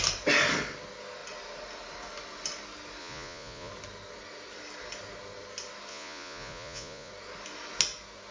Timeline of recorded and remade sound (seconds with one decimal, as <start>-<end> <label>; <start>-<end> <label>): 0.0-3.0 recorded; 3.0-3.7 remade; 3.7-5.9 recorded; 5.9-7.1 remade; 7.1-8.3 recorded